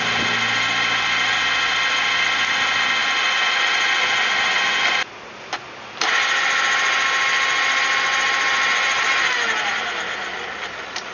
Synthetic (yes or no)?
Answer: no